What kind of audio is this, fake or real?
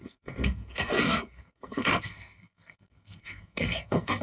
fake